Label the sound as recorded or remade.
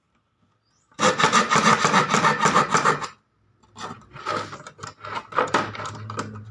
recorded